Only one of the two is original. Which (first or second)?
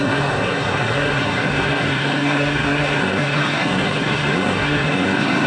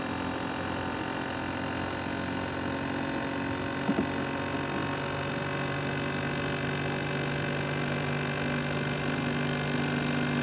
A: second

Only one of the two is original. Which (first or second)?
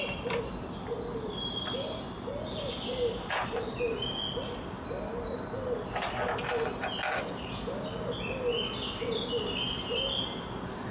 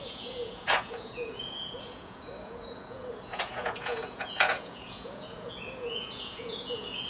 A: first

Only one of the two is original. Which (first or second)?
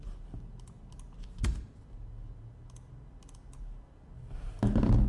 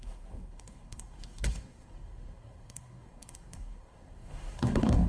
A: first